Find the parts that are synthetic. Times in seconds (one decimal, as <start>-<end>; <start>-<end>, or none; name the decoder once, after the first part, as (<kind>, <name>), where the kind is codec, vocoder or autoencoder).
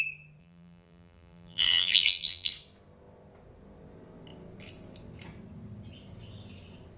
0.4-2.5 (vocoder, BigVGAN v2)